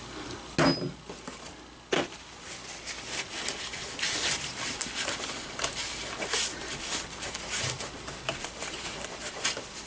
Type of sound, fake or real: real